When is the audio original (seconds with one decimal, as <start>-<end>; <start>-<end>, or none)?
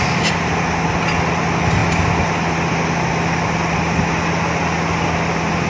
0.0-5.7